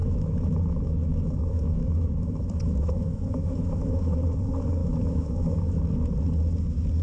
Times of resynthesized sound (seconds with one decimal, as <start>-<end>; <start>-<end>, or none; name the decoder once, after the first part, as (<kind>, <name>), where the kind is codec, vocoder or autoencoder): 0.0-4.2 (autoencoder, DAC-VAE); 4.8-5.8